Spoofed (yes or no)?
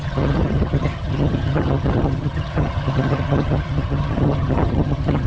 yes